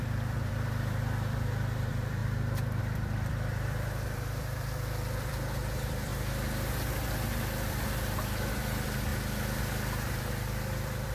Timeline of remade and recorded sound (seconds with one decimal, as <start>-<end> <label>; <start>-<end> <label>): 0.0-9.1 remade; 9.1-9.7 recorded; 9.7-11.1 remade